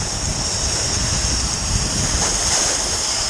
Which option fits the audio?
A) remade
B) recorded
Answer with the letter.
A